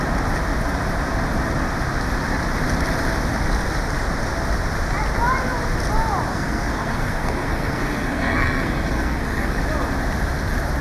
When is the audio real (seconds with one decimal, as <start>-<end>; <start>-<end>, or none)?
0.0-6.3; 9.6-10.8